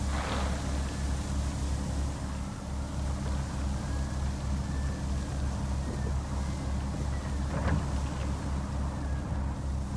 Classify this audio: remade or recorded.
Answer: recorded